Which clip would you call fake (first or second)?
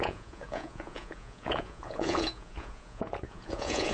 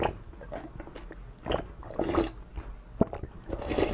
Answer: first